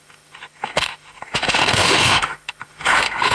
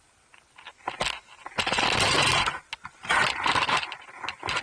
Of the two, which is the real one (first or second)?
second